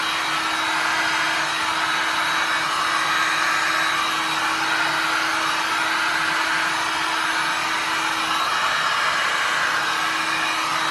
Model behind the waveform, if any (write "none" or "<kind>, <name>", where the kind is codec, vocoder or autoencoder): none